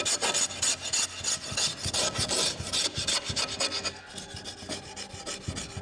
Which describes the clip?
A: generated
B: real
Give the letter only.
B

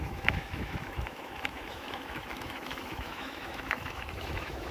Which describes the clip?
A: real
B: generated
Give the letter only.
B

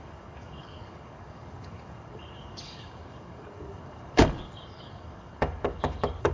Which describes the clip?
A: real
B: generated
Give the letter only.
B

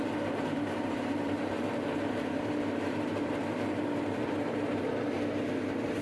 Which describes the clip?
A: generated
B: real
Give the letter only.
A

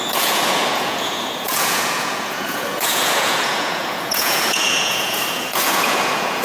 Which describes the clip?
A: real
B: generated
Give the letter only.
B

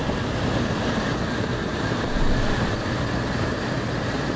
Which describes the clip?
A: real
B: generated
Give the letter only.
A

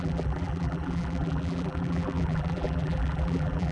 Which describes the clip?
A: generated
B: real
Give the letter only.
A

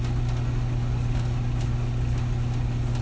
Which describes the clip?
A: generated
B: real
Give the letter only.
B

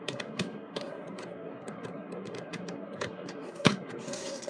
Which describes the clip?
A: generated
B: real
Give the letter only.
A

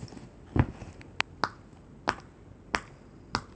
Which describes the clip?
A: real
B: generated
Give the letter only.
A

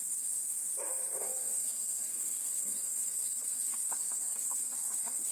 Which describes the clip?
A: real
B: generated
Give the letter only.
B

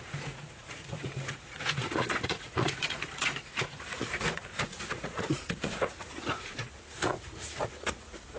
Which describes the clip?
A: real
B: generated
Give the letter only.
B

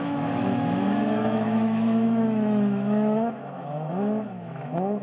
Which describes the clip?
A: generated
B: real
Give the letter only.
A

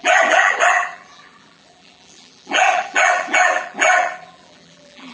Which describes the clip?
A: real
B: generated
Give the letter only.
B